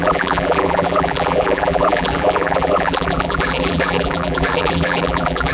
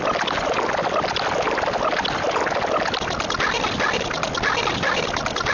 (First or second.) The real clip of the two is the second